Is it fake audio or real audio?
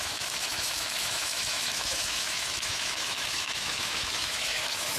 fake